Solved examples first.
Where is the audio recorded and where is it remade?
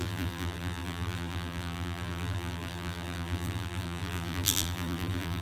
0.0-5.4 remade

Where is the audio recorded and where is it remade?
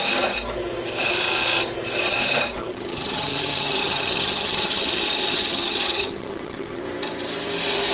0.0-2.6 recorded; 2.6-6.8 remade; 6.8-7.9 recorded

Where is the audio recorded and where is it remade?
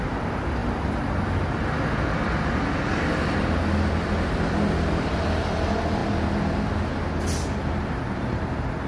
0.0-8.9 recorded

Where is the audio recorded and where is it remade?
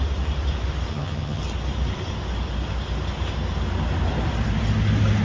0.0-0.9 recorded; 0.9-1.4 remade; 1.4-5.2 recorded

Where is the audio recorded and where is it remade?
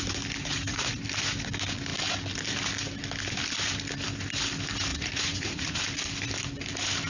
0.0-0.4 recorded; 0.4-0.9 remade; 0.9-4.9 recorded; 4.9-5.8 remade; 5.8-7.1 recorded